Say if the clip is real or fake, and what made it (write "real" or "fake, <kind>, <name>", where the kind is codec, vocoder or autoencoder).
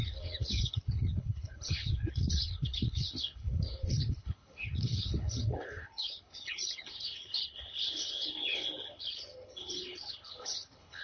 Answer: fake, codec, HILCodec